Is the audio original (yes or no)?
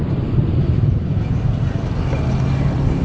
yes